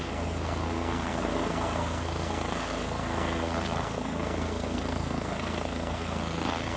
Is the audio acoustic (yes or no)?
no